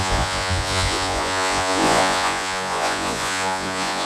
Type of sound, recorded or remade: remade